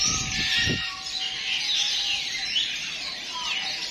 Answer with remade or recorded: recorded